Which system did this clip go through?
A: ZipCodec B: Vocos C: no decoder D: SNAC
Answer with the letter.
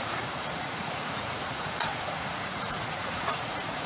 B